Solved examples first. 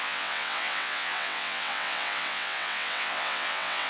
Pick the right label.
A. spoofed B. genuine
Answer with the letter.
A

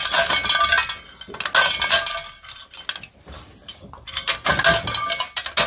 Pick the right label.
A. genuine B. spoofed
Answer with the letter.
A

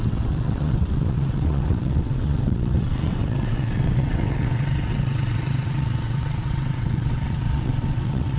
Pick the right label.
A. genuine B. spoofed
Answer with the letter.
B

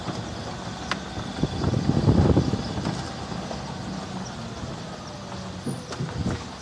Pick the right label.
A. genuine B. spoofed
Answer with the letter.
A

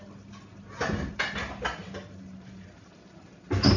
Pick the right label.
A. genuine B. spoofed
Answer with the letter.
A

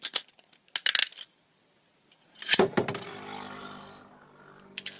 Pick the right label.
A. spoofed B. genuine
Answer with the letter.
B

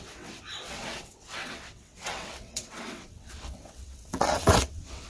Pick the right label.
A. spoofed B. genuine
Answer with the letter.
A